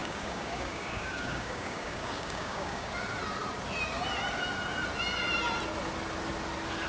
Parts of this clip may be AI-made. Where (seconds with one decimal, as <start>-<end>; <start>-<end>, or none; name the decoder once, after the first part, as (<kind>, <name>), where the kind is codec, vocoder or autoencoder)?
0.0-2.9 (codec, DAC)